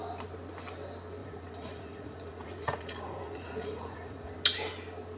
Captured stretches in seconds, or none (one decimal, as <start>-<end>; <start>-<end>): 0.0-1.2; 4.3-5.2